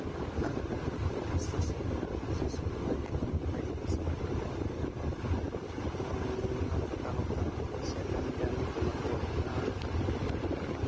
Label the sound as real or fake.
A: real